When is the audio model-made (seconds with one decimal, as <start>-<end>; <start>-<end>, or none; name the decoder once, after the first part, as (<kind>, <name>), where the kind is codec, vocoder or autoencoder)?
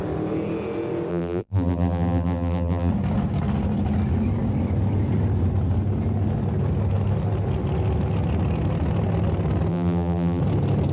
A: 1.1-2.9 (vocoder, BigVGAN v2); 9.7-10.4